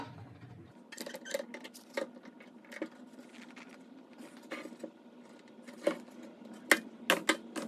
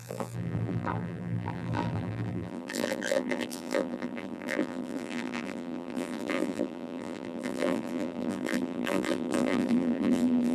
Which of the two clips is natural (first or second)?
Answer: first